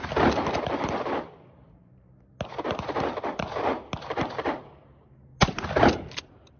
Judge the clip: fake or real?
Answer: real